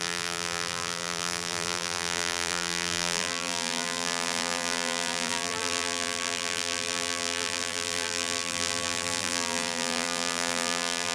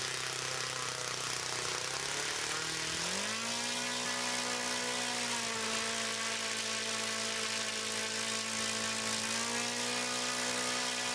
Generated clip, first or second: first